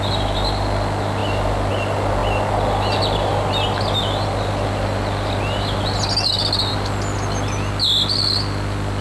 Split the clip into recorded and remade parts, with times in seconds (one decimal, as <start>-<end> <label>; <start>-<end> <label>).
0.0-9.0 recorded